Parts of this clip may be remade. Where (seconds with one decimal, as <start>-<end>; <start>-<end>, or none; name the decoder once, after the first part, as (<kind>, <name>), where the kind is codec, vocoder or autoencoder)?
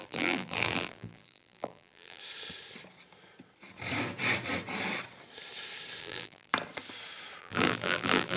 0.0-2.2 (vocoder, BigVGAN v2); 6.0-6.5; 7.4-8.4